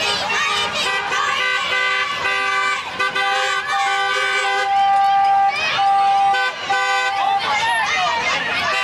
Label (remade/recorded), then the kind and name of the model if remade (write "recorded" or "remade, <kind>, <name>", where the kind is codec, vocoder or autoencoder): recorded